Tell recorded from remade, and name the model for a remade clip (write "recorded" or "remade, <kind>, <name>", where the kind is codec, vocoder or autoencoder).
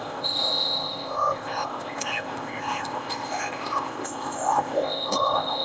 remade, codec, ZipCodec